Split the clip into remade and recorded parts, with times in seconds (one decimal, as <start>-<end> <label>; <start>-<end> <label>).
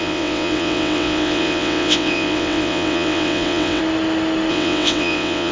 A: 0.0-3.8 remade; 3.8-4.5 recorded; 4.5-5.5 remade